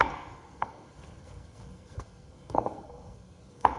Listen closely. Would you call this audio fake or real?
fake